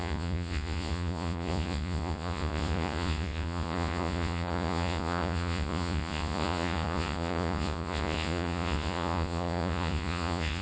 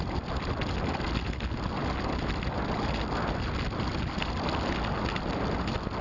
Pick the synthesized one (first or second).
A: first